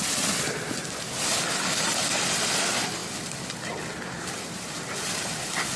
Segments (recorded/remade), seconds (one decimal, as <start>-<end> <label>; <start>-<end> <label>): 0.0-5.8 recorded

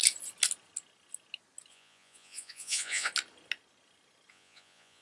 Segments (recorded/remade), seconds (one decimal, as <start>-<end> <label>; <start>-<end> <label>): 0.0-1.7 recorded; 1.7-3.1 remade; 3.1-4.3 recorded; 4.3-5.0 remade

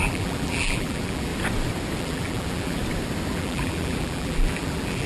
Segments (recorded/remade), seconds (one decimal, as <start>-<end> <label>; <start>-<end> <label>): 0.0-1.3 remade; 1.3-2.0 recorded; 2.0-2.8 remade; 2.8-3.3 recorded; 3.3-5.1 remade

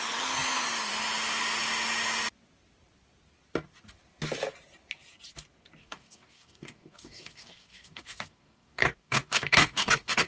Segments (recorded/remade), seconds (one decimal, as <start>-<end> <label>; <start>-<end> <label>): 0.0-5.8 recorded; 5.8-10.3 remade

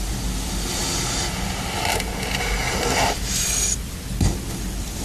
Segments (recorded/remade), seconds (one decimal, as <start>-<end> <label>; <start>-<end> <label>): 0.0-5.0 recorded

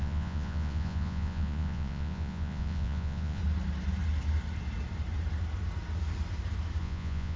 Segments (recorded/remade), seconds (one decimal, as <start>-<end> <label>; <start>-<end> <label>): 0.0-3.4 remade; 3.4-6.8 recorded; 6.8-7.4 remade